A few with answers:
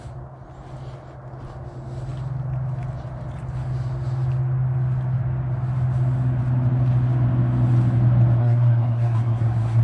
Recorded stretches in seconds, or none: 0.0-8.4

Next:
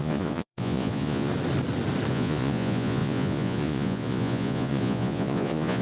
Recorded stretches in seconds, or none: 1.3-2.1

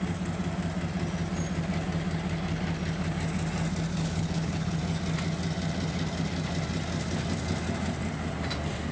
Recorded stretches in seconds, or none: 0.0-3.9; 4.8-8.9

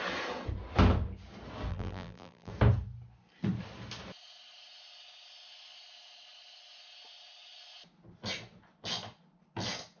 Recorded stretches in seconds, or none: 0.0-1.7; 2.5-10.0

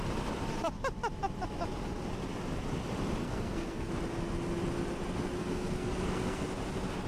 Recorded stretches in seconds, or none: 0.0-3.2; 3.9-5.4; 6.5-7.1

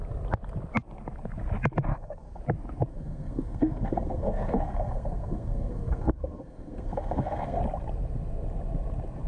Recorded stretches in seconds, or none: 0.0-1.9; 2.4-2.9; 7.6-9.3

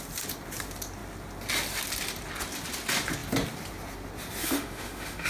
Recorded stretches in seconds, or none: 0.0-4.4